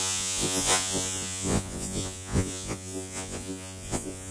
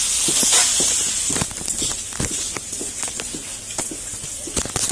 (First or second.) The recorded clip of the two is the second